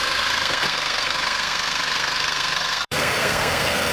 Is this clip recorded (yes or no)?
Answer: no